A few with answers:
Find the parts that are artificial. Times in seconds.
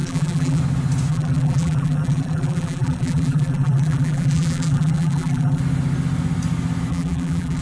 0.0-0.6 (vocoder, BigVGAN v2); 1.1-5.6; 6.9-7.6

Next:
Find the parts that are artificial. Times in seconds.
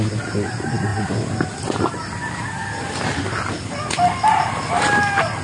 none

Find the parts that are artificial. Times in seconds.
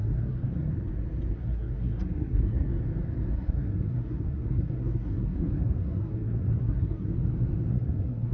0.0-0.7 (codec, SNAC); 1.3-2.7; 3.3-7.1; 7.7-8.3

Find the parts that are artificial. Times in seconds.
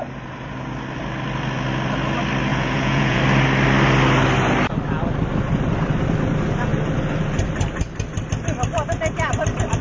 2.5-3.2 (vocoder, Vocos)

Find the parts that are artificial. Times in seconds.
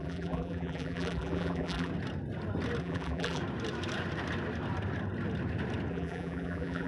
0.0-1.9 (vocoder, BigVGAN v2); 2.8-3.4; 5.9-6.9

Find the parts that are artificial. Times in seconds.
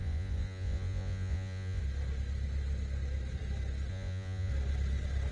0.0-1.8 (vocoder, Vocos); 3.9-4.5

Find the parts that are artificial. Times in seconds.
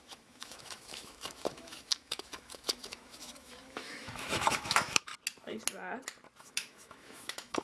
0.0-5.1 (autoencoder, DAC-VAE); 6.4-7.6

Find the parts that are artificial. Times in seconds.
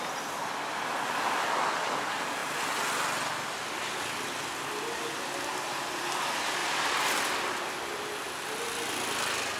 6.6-8.5 (vocoder, BigVGAN v2)